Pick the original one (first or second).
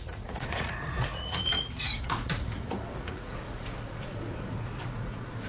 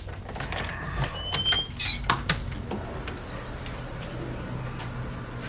second